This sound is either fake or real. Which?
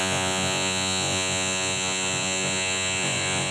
fake